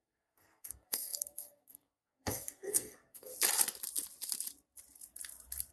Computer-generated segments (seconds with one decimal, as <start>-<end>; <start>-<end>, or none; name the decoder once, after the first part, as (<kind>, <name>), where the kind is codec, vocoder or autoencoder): 0.0-3.3 (codec, SNAC)